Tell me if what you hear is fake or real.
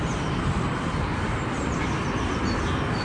real